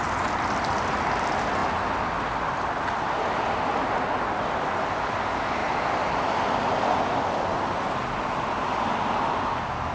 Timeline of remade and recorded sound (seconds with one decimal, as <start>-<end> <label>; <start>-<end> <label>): 0.0-9.9 recorded